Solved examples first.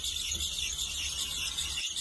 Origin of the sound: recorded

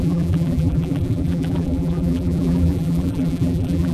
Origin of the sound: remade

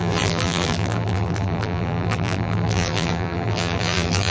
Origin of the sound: remade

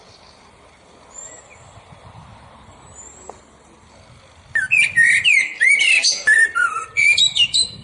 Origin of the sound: remade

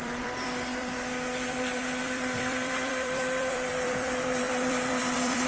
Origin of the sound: remade